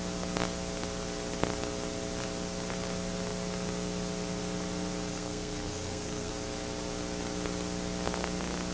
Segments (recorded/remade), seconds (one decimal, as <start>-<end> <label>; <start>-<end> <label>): 0.0-5.1 recorded; 5.1-6.3 remade; 6.3-8.7 recorded